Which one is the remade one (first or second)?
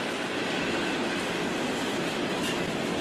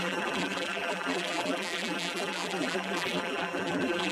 second